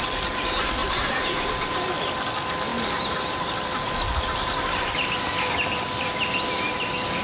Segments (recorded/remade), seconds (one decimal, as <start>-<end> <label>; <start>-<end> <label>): 0.0-7.2 recorded